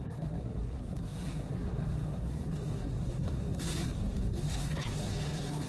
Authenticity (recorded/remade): remade